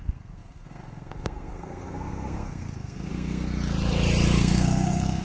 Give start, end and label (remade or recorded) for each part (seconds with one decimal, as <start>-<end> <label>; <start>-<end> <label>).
0.0-3.5 remade; 3.5-4.4 recorded; 4.4-5.2 remade